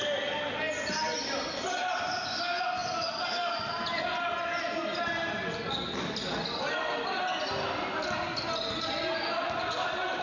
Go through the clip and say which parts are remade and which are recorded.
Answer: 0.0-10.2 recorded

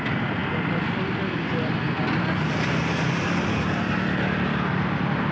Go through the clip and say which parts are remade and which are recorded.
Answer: 0.0-5.3 recorded